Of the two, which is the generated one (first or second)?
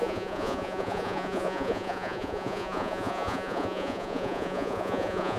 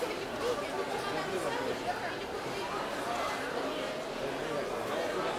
first